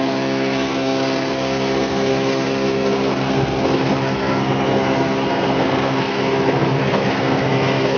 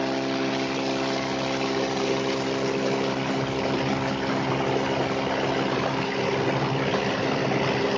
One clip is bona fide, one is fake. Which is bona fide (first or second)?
second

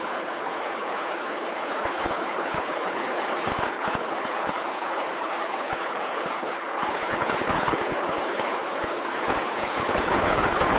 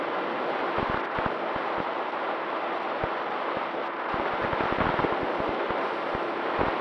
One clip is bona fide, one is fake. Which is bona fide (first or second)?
second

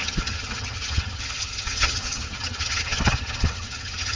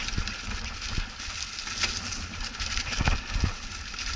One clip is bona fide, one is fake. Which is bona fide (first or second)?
second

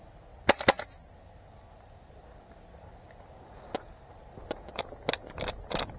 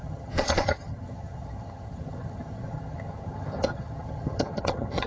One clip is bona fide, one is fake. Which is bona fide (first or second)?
first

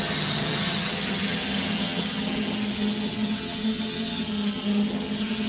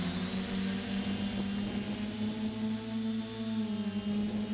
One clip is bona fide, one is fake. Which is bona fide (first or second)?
second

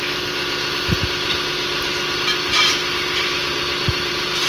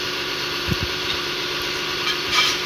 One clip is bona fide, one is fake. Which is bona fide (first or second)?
first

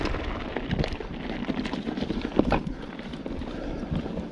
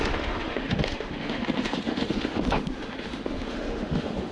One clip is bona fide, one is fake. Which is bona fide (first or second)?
first